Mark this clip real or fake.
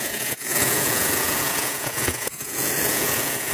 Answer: fake